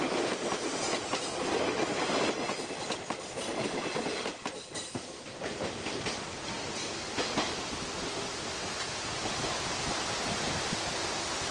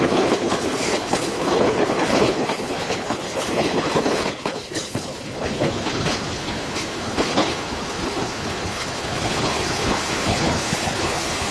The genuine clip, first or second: first